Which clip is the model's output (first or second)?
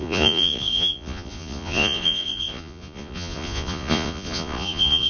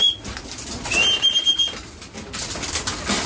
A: first